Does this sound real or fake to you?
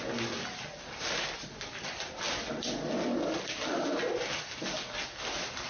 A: real